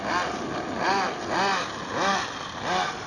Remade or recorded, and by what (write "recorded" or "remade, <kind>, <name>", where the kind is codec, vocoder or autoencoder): recorded